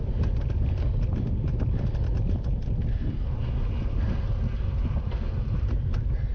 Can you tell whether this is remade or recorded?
recorded